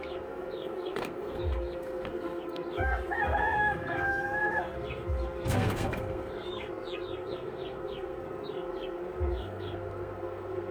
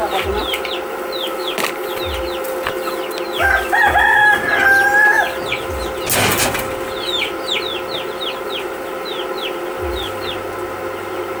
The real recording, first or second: second